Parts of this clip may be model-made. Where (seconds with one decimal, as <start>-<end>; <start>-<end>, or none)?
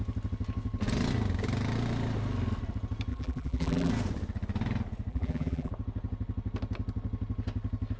3.1-3.9; 5.1-5.7